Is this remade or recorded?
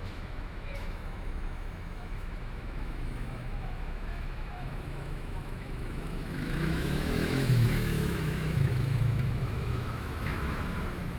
remade